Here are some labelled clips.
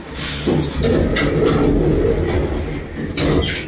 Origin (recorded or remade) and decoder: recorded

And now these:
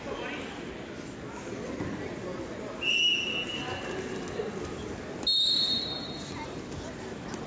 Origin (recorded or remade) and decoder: recorded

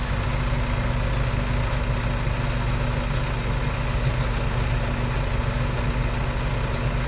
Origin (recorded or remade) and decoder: recorded